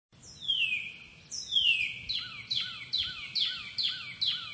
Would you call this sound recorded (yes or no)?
yes